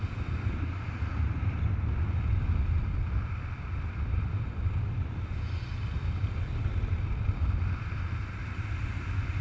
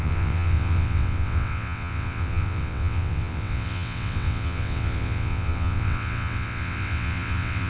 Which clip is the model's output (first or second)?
second